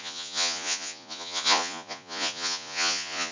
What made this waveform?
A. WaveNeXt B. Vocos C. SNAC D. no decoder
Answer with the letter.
B